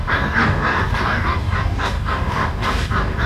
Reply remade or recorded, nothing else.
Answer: remade